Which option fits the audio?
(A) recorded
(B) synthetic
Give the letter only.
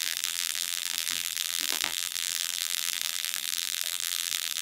B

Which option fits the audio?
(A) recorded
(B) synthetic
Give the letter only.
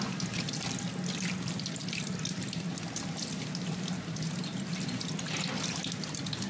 A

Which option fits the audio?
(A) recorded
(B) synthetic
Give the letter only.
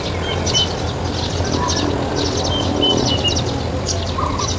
A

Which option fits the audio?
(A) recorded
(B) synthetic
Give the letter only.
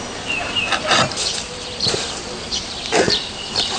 B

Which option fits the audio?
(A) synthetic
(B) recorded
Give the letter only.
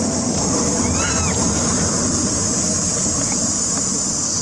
A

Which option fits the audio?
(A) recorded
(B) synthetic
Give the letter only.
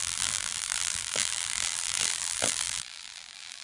B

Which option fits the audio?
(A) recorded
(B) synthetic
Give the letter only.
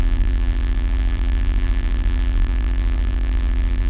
B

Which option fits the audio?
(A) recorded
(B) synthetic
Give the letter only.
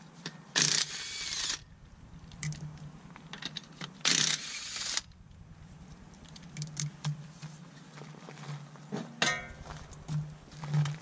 A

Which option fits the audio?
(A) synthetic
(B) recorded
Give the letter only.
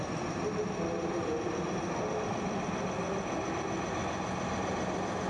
B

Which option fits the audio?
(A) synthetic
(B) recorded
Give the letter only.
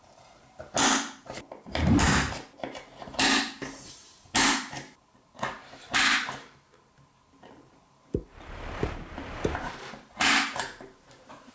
A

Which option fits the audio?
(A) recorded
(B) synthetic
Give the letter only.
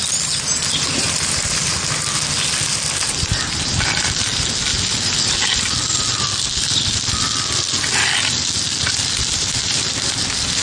A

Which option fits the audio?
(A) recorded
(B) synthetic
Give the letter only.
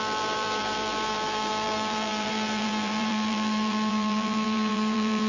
B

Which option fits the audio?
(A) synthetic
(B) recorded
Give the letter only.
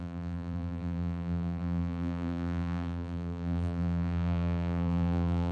A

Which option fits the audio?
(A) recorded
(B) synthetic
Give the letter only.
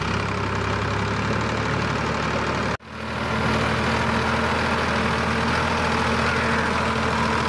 A